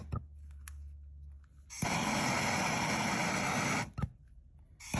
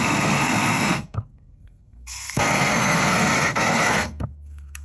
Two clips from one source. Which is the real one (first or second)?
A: first